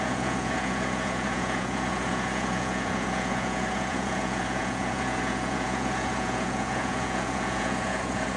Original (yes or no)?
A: no